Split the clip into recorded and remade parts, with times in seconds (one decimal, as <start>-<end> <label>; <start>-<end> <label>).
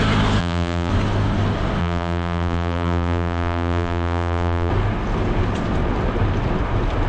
0.0-0.4 recorded; 0.4-0.9 remade; 0.9-1.8 recorded; 1.8-4.7 remade; 4.7-7.1 recorded